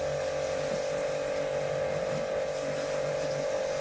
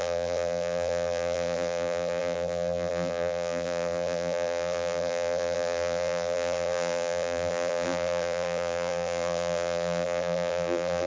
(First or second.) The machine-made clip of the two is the second